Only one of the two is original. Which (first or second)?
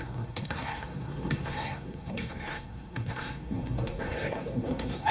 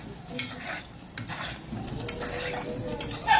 second